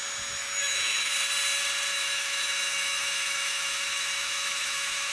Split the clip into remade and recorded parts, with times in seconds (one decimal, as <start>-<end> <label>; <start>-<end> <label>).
0.0-0.4 recorded; 0.4-1.1 remade; 1.1-1.9 recorded; 1.9-5.1 remade